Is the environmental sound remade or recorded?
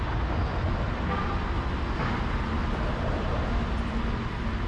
recorded